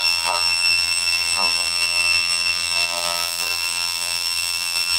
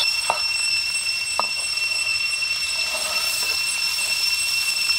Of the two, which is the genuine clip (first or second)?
second